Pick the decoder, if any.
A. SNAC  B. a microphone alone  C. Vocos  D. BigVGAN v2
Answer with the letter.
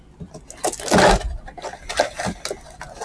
B